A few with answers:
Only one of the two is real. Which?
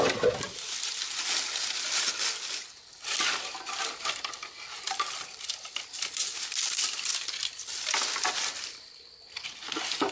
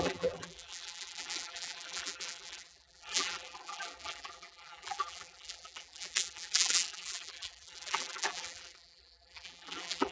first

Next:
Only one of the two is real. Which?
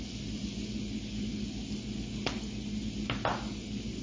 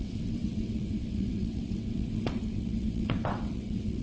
first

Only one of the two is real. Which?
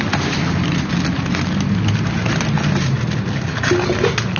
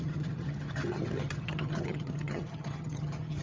first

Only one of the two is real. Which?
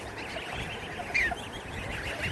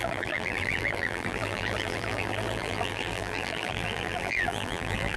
first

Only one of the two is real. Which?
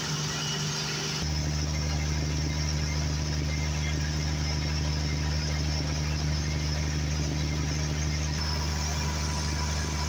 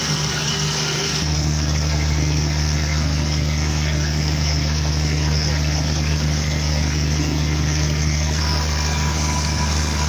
first